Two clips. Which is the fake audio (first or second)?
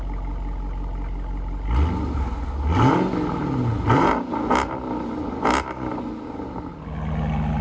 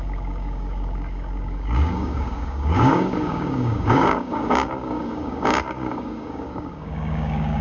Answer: second